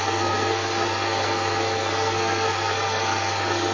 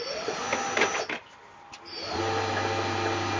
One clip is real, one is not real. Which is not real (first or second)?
first